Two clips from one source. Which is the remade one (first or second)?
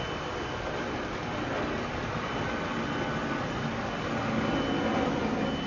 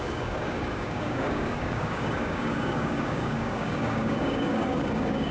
second